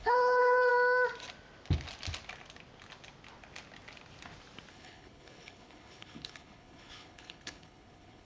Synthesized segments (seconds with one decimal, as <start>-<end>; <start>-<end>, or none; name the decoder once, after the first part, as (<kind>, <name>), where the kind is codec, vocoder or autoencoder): 0.0-0.7 (codec, HILCodec); 4.7-8.2